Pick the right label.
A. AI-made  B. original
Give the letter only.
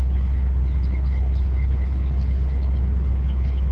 A